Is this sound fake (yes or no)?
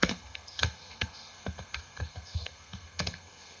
yes